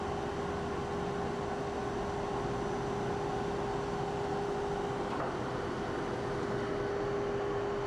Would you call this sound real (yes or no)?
yes